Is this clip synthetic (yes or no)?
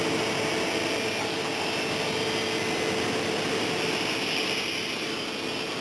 no